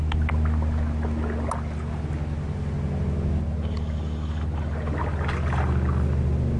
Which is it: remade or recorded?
recorded